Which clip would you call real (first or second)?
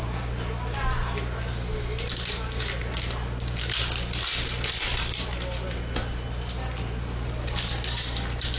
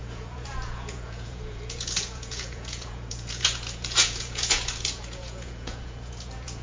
first